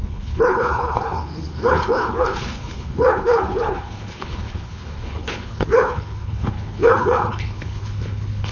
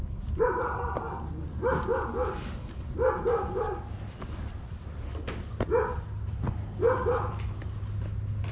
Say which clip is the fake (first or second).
first